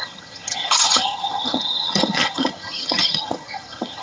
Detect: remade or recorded remade